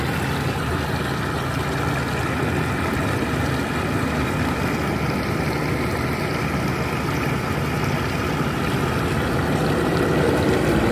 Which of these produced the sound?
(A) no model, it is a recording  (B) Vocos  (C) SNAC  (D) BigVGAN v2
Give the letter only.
A